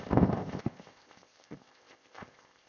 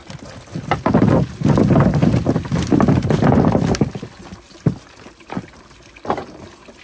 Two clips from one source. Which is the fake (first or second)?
first